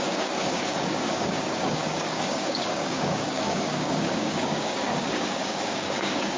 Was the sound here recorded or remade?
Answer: remade